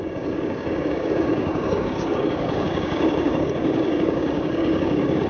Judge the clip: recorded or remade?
remade